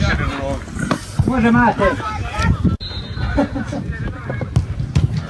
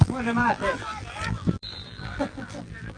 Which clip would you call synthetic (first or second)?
second